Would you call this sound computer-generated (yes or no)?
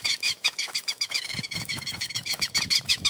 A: yes